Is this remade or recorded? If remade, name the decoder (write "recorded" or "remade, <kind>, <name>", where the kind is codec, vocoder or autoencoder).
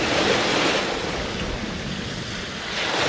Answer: recorded